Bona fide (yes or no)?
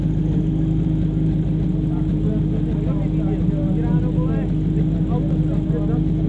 yes